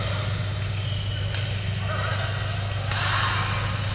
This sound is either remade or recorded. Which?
recorded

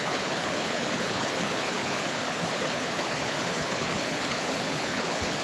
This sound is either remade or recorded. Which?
remade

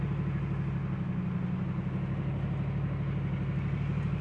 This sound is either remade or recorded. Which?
recorded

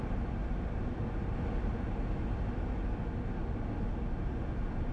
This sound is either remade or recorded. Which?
recorded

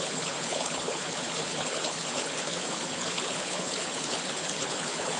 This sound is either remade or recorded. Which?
remade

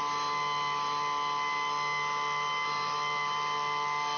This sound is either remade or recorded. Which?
recorded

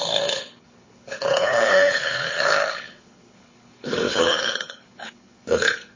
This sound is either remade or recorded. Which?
remade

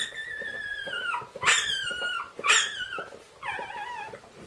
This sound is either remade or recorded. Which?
recorded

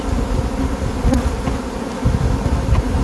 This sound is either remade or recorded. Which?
recorded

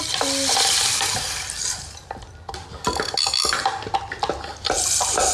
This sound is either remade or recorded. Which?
recorded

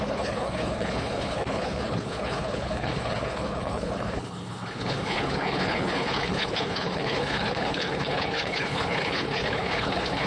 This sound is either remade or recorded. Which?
remade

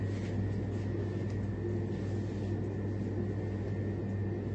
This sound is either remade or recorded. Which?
recorded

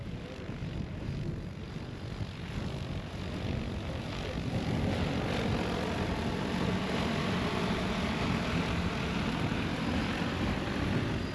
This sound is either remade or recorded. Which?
recorded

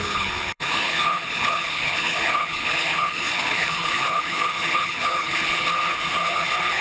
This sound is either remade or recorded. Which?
remade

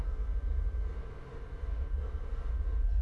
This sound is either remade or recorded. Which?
recorded